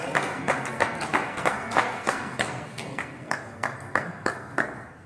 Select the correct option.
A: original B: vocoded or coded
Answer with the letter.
B